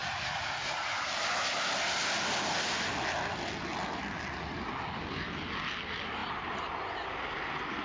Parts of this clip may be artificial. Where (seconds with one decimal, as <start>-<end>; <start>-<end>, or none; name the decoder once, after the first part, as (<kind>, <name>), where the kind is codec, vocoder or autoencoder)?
0.0-0.9 (vocoder, Vocos)